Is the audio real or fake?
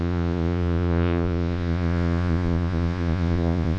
fake